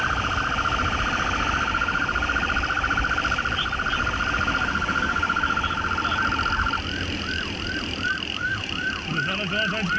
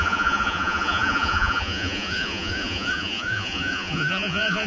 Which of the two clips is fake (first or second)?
second